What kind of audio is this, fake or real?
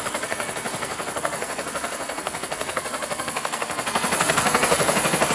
fake